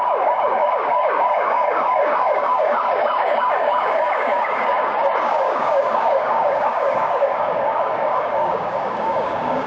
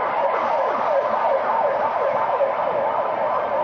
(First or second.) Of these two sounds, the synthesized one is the first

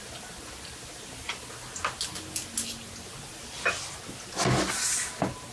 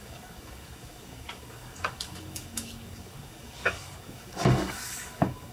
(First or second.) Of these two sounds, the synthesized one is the second